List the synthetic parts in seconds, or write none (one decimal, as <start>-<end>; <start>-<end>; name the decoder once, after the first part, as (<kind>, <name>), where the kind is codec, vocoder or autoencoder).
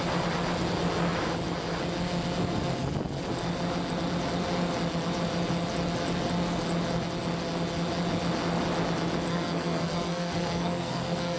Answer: 9.3-11.4 (codec, SNAC)